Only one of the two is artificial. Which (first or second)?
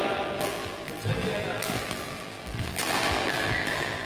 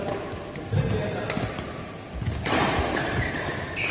first